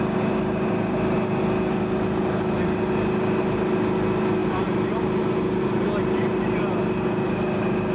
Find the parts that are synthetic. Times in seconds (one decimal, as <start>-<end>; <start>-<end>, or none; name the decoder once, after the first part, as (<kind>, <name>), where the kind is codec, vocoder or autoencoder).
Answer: none